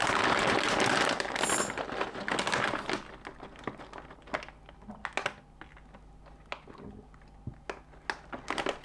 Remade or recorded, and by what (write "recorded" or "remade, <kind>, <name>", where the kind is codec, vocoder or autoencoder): recorded